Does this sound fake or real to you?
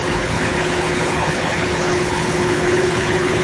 fake